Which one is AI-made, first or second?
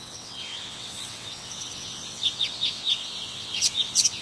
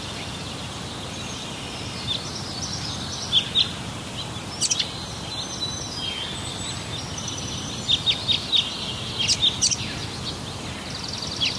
first